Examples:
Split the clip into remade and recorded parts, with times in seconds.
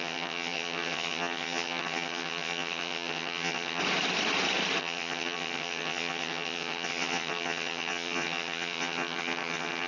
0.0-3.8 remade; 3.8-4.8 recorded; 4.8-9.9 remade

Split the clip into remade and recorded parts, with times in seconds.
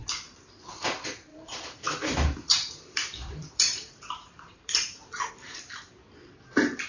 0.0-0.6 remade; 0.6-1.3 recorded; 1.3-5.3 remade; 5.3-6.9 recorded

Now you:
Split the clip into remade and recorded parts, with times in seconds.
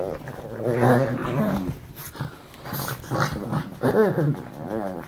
0.0-5.1 recorded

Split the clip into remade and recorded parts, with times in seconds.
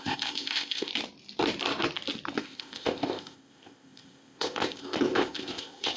0.0-0.9 remade; 0.9-2.4 recorded; 2.4-6.0 remade